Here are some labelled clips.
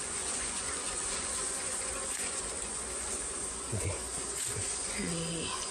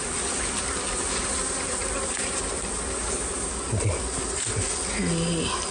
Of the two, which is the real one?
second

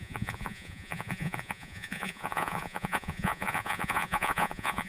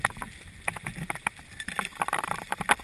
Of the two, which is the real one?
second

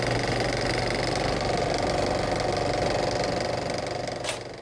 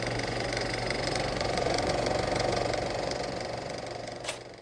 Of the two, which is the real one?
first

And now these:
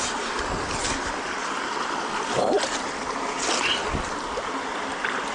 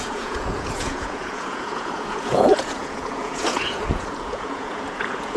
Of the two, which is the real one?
first